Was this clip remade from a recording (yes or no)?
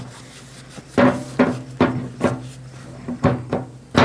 no